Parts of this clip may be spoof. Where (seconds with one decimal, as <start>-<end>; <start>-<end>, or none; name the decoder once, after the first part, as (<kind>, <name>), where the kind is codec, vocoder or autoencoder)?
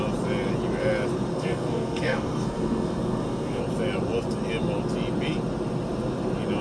1.3-3.6 (codec, SNAC)